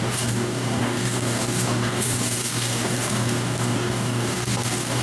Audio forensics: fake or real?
fake